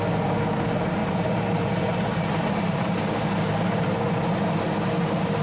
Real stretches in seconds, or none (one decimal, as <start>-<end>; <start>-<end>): 0.0-1.0; 4.2-5.4